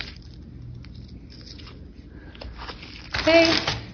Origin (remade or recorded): recorded